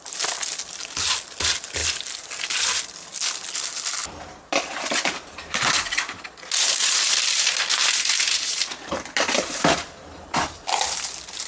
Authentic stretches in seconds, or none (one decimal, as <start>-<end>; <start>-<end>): 0.0-11.5